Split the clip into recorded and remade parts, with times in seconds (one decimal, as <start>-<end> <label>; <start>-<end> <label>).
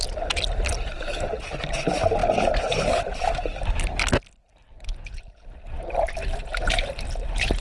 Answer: 0.0-7.6 recorded